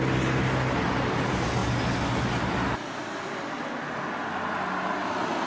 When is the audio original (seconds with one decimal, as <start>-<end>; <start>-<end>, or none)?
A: 0.0-3.0; 4.0-5.5